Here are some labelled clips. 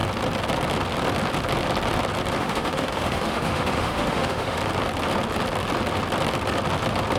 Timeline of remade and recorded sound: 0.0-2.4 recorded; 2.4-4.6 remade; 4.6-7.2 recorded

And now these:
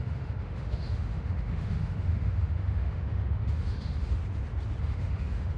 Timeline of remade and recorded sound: 0.0-4.2 remade; 4.2-4.8 recorded; 4.8-5.6 remade

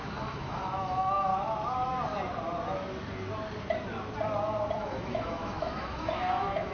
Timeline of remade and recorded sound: 0.0-1.3 remade; 1.3-4.8 recorded; 4.8-6.7 remade

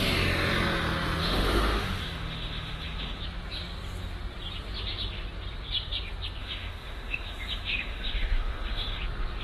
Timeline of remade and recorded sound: 0.0-1.2 recorded; 1.2-3.2 remade; 3.2-6.4 recorded; 6.4-9.0 remade; 9.0-9.4 recorded

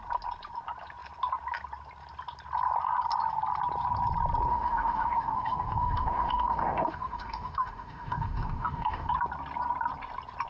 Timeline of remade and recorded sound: 0.0-4.5 recorded; 4.5-9.1 remade; 9.1-10.5 recorded

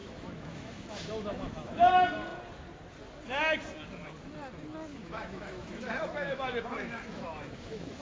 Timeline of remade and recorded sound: 0.0-1.9 remade; 1.9-4.9 recorded; 4.9-8.0 remade

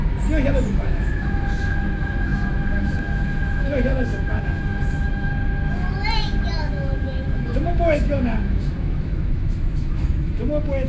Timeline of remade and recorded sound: 0.0-0.7 recorded; 0.7-5.3 remade; 5.3-6.7 recorded; 6.7-10.9 remade